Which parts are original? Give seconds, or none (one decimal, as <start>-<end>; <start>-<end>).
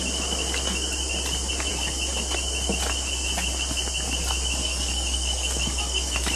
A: 0.0-4.6